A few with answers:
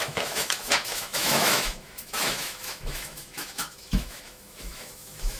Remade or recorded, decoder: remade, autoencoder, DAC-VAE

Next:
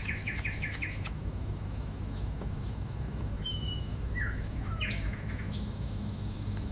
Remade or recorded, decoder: remade, autoencoder, DAC-VAE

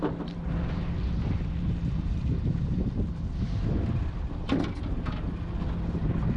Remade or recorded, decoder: recorded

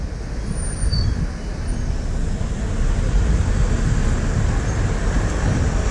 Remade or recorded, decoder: recorded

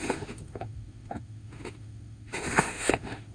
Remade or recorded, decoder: remade, autoencoder, DAC-VAE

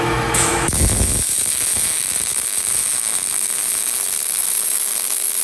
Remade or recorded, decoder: remade, autoencoder, DAC-VAE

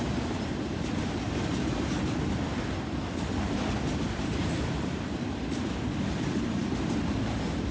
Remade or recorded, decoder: recorded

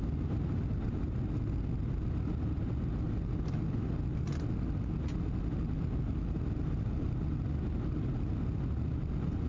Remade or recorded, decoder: recorded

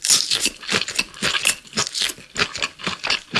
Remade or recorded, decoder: recorded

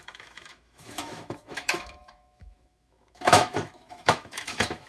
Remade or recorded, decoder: remade, autoencoder, DAC-VAE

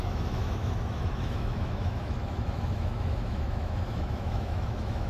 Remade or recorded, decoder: remade, autoencoder, DAC-VAE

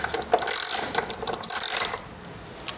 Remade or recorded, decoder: recorded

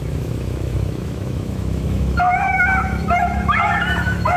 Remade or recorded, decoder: remade, autoencoder, DAC-VAE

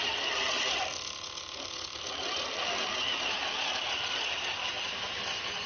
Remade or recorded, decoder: recorded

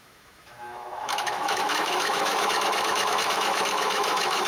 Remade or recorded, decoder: remade, autoencoder, DAC-VAE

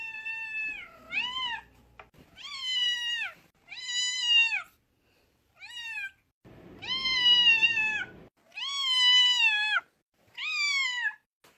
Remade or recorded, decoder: recorded